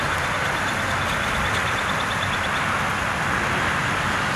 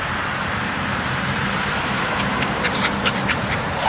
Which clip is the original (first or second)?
first